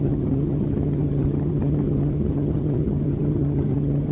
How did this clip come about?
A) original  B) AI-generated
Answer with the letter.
B